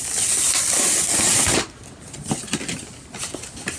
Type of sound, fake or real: real